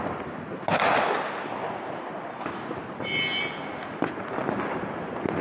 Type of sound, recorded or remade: recorded